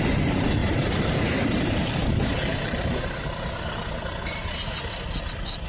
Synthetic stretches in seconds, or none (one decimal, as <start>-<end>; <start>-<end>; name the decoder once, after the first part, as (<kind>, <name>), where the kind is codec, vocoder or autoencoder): 0.6-4.0 (vocoder, BigVGAN v2)